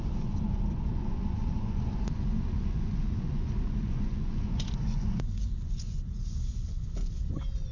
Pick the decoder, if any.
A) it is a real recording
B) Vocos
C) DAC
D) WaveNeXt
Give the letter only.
B